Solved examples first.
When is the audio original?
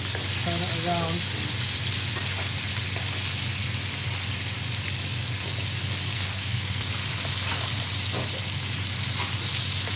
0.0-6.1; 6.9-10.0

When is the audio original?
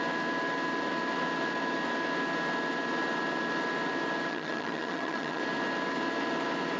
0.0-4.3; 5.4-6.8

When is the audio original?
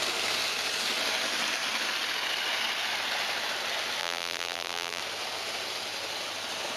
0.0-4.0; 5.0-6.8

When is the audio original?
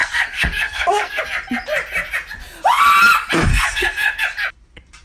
1.2-3.5; 4.2-5.0